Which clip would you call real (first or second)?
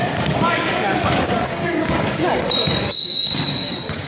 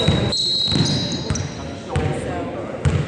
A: second